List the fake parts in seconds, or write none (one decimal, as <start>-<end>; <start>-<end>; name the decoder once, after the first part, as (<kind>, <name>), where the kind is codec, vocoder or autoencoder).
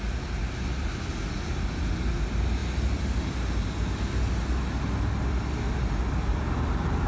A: none